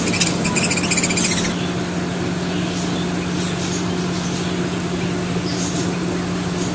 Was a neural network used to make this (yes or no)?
no